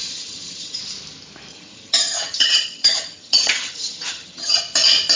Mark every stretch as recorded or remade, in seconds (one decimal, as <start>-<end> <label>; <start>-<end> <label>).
0.0-0.8 remade; 0.8-1.5 recorded; 1.5-4.6 remade; 4.6-5.2 recorded